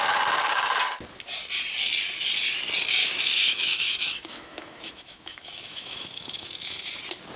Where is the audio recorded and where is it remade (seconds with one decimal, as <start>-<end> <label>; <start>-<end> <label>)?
0.0-3.0 recorded; 3.0-7.0 remade; 7.0-7.4 recorded